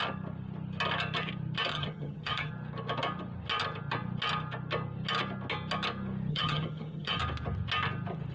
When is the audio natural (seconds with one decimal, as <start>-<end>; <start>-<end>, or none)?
0.0-1.7; 2.5-6.3; 7.2-8.3